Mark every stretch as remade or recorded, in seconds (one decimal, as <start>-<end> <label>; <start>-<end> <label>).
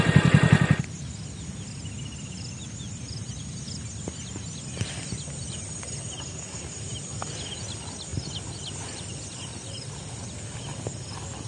0.0-11.5 recorded